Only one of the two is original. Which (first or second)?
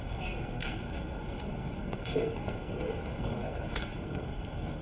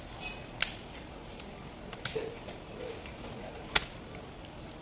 second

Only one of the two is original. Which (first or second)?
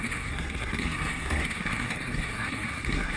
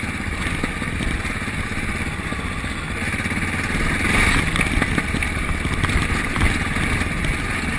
second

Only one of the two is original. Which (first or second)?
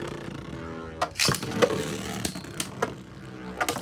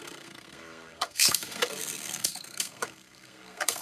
first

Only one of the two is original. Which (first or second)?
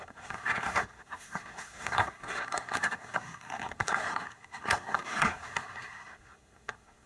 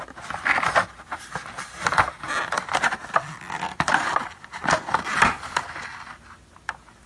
second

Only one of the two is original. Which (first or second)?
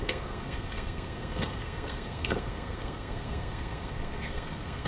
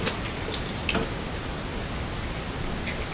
second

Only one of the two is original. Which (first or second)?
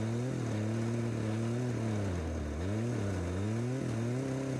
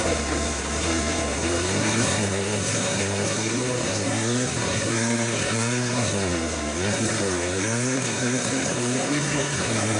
first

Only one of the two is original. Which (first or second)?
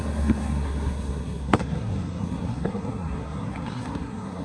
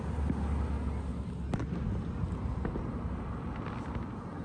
second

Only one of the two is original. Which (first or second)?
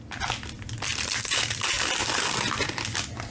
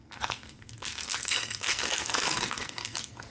first